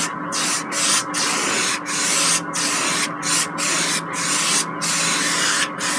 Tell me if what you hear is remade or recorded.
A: recorded